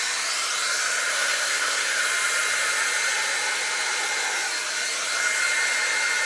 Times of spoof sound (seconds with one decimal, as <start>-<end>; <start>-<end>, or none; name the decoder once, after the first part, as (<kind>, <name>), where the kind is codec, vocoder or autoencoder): 1.1-2.0 (codec, SNAC)